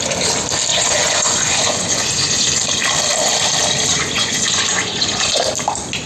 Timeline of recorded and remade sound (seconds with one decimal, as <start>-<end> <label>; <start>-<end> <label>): 0.0-0.7 recorded; 0.7-2.5 remade; 2.5-3.9 recorded; 3.9-5.4 remade; 5.4-6.1 recorded